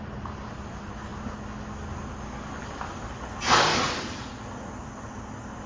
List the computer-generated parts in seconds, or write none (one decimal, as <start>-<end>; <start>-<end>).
none